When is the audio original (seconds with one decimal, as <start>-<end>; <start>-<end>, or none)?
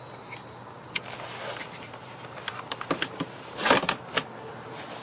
0.0-1.6; 4.6-5.0